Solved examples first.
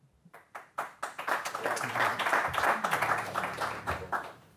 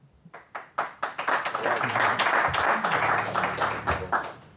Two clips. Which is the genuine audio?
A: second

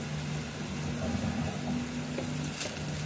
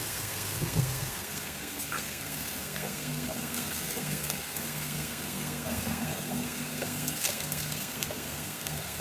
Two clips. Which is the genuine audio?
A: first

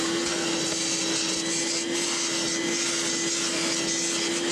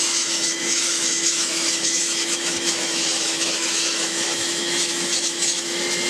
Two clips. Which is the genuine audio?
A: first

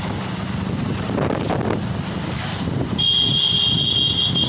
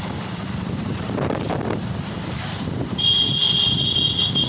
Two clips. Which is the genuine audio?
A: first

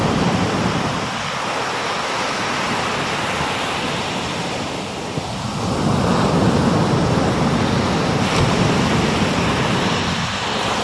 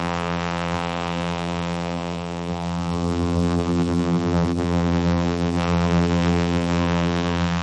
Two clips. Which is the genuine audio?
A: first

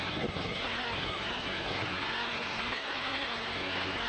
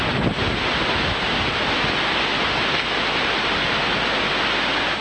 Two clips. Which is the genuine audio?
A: second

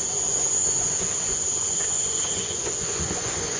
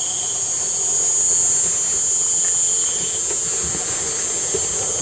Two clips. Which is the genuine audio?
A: second